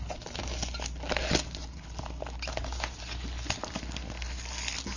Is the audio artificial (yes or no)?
no